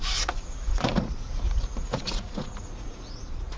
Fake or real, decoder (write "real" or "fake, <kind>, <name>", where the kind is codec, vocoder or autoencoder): fake, vocoder, Vocos